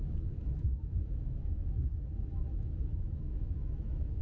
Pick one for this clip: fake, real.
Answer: fake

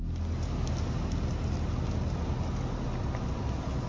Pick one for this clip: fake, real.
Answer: real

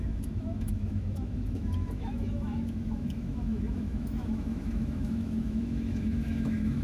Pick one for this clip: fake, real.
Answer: fake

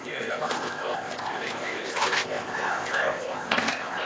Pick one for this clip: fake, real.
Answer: fake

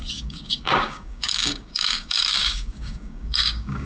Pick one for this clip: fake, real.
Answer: fake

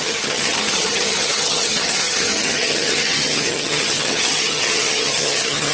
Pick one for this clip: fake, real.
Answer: fake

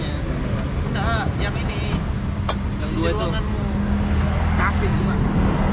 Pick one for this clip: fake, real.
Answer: real